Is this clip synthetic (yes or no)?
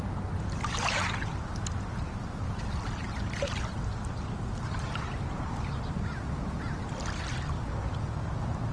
no